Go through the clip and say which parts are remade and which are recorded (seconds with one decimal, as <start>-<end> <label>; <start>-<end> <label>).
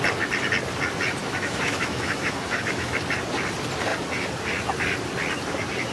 0.0-1.2 recorded; 1.2-3.0 remade; 3.0-5.9 recorded